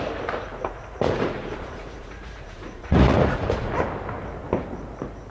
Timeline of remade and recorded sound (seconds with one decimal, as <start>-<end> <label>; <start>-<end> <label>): 0.0-0.5 recorded; 0.5-3.7 remade; 3.7-5.3 recorded